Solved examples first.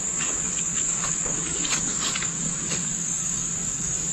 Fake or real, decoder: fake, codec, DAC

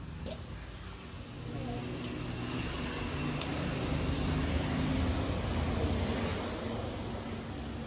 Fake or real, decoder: real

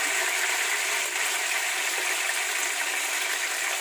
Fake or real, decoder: real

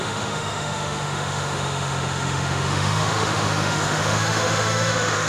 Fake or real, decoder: fake, autoencoder, DAC-VAE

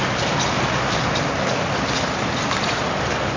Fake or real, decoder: real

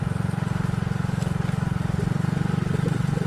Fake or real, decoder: real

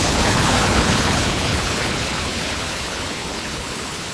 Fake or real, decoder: fake, codec, HILCodec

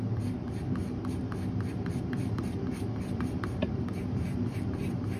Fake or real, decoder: fake, vocoder, BigVGAN v2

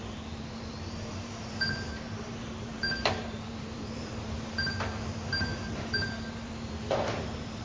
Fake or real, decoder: fake, vocoder, BigVGAN v2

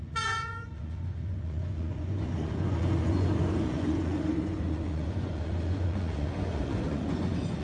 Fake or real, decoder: fake, vocoder, Vocos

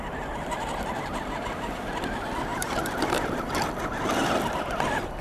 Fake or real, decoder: fake, vocoder, BigVGAN v2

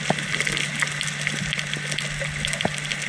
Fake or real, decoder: real